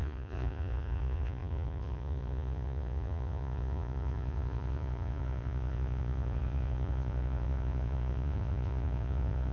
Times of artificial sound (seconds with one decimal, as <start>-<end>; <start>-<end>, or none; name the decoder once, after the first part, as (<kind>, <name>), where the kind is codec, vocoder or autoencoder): 0.0-9.5 (vocoder, Vocos)